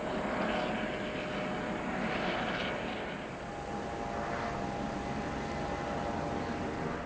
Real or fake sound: real